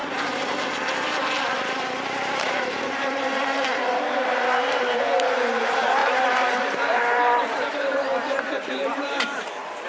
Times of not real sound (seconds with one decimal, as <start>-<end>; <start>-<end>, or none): 0.0-9.9